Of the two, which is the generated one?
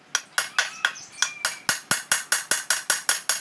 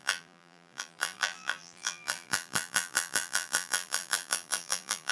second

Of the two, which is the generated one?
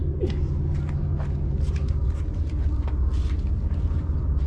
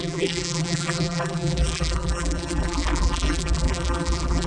second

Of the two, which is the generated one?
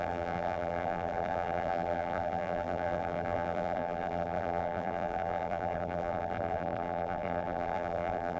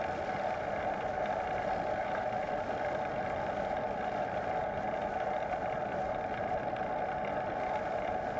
first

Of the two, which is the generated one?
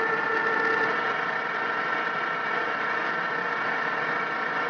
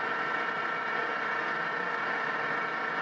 first